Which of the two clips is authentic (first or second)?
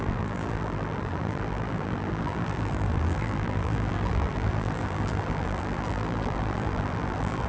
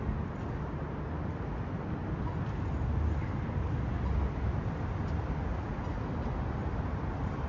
second